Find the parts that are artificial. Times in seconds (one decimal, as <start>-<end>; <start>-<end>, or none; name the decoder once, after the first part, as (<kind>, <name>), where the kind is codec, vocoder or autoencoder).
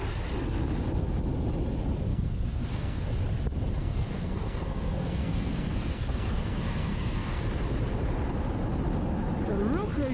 2.1-3.1 (codec, SNAC); 3.8-7.4